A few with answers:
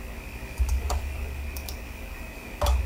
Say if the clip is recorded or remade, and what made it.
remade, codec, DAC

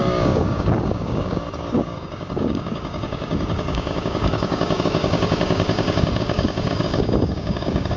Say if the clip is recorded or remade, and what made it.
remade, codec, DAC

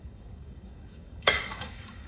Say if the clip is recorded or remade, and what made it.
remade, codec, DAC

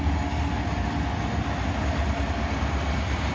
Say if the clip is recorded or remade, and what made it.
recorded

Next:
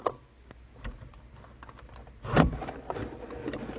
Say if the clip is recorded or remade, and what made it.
recorded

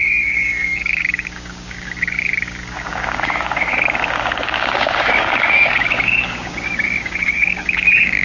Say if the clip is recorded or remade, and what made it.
remade, codec, DAC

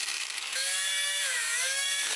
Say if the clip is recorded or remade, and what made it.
remade, codec, DAC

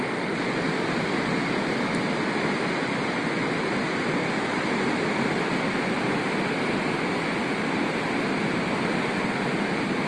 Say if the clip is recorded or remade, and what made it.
recorded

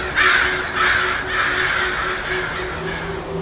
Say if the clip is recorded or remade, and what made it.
recorded